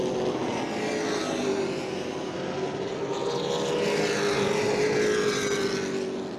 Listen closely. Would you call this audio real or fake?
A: real